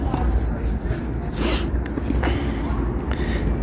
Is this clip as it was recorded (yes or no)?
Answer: yes